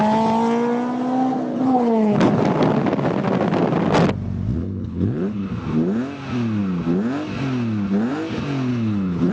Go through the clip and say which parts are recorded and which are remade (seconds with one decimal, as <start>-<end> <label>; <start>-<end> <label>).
0.0-1.5 recorded; 1.5-2.4 remade; 2.4-4.6 recorded; 4.6-5.5 remade; 5.5-8.7 recorded; 8.7-9.3 remade